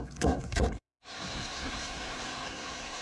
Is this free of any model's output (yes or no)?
no